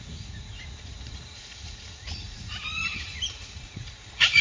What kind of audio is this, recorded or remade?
remade